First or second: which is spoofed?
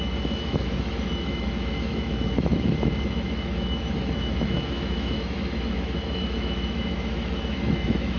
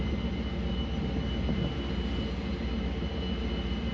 first